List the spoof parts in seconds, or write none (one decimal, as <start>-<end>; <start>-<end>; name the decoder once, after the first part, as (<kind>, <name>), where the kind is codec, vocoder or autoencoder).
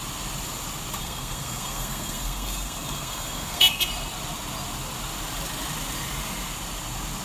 1.0-3.8 (codec, SNAC)